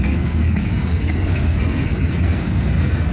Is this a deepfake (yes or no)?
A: yes